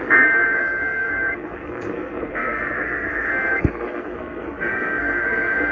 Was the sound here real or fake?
fake